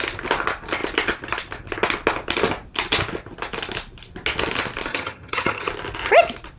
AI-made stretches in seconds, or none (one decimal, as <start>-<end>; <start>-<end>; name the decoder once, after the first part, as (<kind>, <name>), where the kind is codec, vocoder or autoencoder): 4.9-5.7 (vocoder, HiFi-GAN)